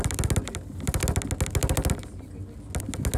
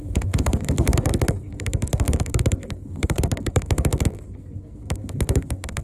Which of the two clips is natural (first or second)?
first